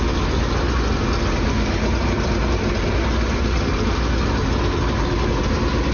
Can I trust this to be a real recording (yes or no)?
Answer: yes